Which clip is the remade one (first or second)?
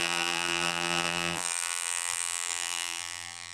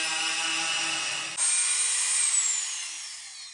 first